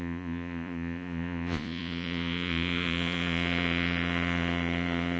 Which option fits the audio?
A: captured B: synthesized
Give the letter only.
B